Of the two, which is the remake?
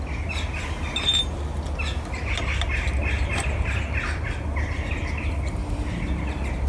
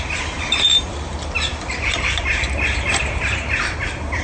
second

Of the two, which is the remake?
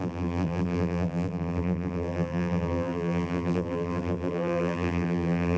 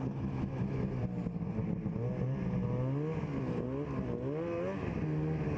first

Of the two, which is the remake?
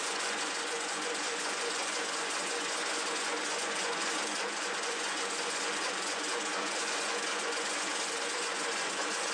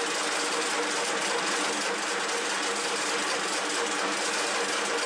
first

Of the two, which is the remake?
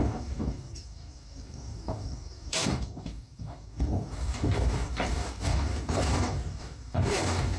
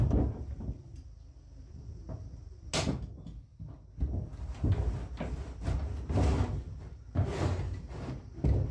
first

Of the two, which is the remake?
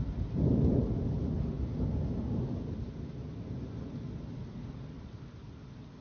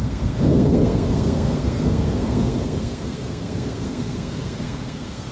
second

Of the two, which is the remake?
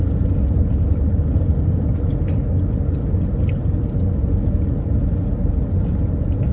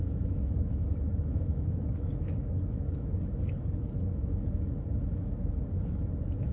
second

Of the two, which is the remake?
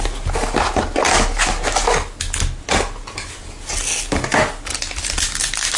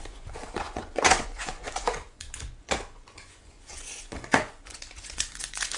second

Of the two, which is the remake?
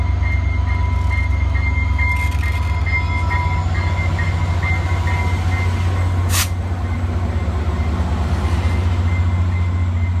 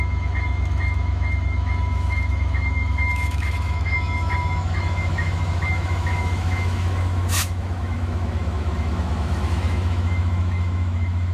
second